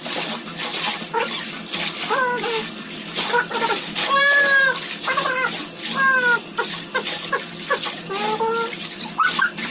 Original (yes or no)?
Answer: yes